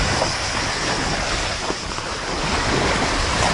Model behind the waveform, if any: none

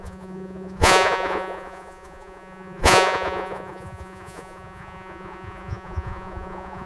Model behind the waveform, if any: vocoder, Vocos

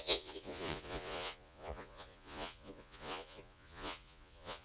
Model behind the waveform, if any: vocoder, Vocos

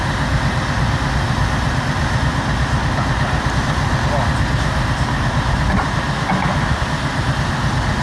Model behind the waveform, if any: none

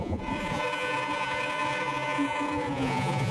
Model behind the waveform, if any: vocoder, Vocos